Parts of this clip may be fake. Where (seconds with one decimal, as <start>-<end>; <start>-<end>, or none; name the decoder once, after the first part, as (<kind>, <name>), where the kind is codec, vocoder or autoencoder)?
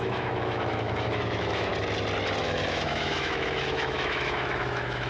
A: 0.0-1.7 (autoencoder, DAC-VAE); 2.4-5.1